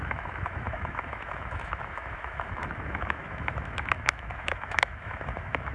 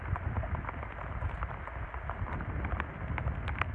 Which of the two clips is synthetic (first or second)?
first